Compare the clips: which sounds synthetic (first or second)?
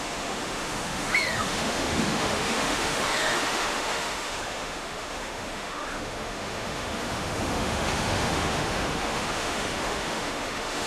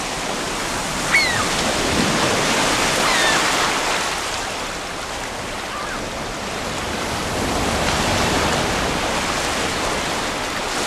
first